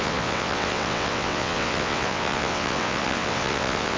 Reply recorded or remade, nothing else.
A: remade